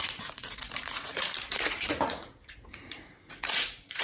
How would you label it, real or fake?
fake